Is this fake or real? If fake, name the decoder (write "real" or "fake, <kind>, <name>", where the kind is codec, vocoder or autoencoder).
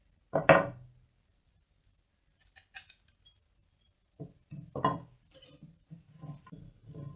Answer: real